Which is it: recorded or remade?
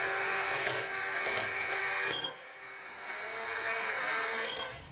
remade